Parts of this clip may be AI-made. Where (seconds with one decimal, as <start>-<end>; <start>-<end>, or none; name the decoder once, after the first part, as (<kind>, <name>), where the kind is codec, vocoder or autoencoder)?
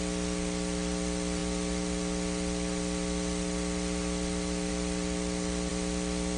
0.0-6.4 (vocoder, BigVGAN v2)